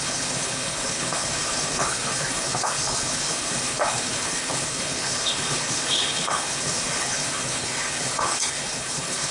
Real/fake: fake